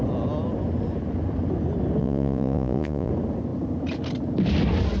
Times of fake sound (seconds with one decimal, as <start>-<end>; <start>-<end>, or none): 2.0-3.1